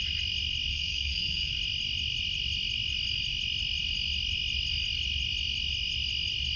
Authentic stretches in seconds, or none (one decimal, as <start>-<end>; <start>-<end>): 0.0-0.7; 1.5-6.6